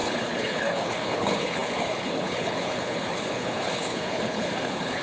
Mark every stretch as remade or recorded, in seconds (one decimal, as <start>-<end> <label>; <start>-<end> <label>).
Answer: 0.0-5.0 remade

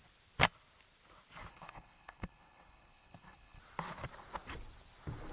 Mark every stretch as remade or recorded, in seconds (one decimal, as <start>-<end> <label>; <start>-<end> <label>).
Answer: 0.0-1.5 recorded; 1.5-3.6 remade; 3.6-5.3 recorded

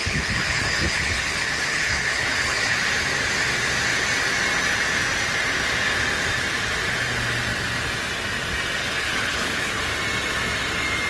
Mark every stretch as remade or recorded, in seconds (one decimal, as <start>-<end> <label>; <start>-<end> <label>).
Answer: 0.0-2.9 remade; 2.9-8.8 recorded; 8.8-9.8 remade; 9.8-11.1 recorded

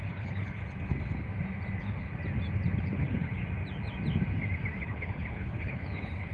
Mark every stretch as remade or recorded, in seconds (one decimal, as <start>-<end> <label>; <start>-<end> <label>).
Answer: 0.0-0.6 remade; 0.6-1.8 recorded; 1.8-2.2 remade; 2.2-2.8 recorded; 2.8-3.4 remade; 3.4-4.8 recorded; 4.8-6.3 remade

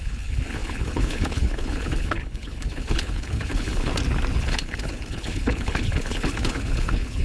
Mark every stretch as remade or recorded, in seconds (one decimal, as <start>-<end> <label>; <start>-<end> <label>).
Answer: 0.0-3.9 remade; 3.9-4.4 recorded; 4.4-7.2 remade

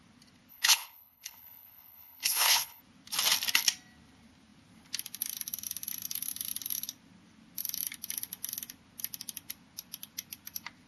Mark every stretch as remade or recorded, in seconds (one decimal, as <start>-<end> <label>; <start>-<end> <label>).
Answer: 0.0-0.5 recorded; 0.5-2.8 remade; 2.8-10.9 recorded